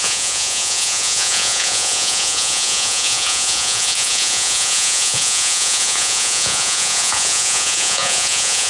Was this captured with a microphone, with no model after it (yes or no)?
no